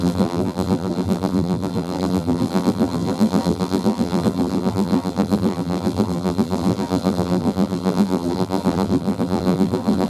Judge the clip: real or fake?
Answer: fake